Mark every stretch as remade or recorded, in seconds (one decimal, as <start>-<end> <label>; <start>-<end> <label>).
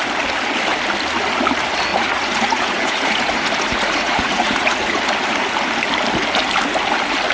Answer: 0.0-1.9 recorded; 1.9-5.0 remade; 5.0-7.3 recorded